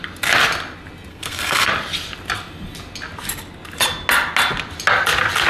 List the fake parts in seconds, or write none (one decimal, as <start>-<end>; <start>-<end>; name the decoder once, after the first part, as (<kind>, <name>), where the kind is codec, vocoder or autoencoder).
1.1-1.7 (codec, SNAC)